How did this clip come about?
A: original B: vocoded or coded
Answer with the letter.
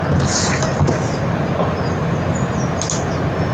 A